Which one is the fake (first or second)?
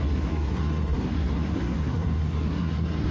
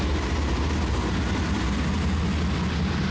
first